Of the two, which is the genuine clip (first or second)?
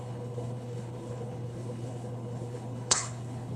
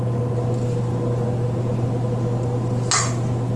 second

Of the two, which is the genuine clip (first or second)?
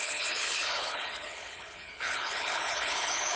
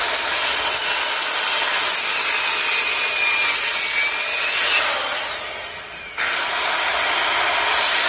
second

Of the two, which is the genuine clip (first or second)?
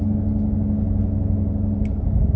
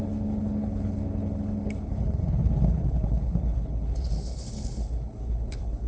first